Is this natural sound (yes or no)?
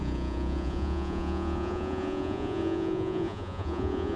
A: no